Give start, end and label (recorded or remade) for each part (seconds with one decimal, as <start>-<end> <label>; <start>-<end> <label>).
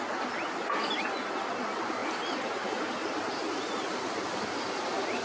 0.0-2.0 recorded; 2.0-2.9 remade; 2.9-5.2 recorded